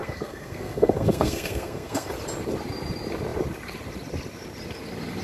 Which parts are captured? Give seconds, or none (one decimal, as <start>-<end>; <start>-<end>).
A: 2.1-5.2